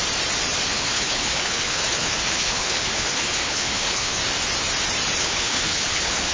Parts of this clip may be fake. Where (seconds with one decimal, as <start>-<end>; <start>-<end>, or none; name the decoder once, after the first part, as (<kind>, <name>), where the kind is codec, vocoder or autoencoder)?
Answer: 0.7-4.2 (codec, HILCodec); 5.2-6.3